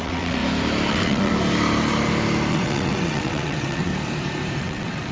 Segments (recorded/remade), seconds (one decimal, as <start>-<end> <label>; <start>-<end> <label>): 0.0-0.4 remade; 0.4-0.9 recorded; 0.9-1.3 remade; 1.3-2.5 recorded; 2.5-3.9 remade; 3.9-4.6 recorded; 4.6-5.1 remade

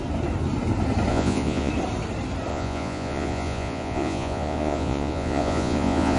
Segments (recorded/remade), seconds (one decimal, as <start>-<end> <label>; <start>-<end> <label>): 0.0-1.1 recorded; 1.1-1.7 remade; 1.7-2.5 recorded; 2.5-6.2 remade

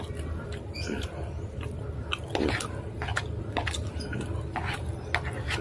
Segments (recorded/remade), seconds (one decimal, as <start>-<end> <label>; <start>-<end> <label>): 0.0-5.6 recorded

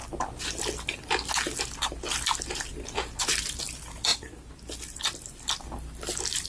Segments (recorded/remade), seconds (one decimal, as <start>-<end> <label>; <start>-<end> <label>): 0.0-6.5 recorded